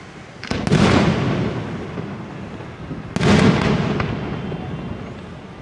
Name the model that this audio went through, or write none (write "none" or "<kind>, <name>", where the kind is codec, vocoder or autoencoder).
none